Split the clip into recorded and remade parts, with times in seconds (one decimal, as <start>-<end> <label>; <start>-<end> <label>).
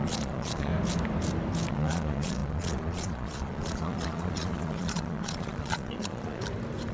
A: 0.0-0.7 remade; 0.7-1.7 recorded; 1.7-6.4 remade; 6.4-6.9 recorded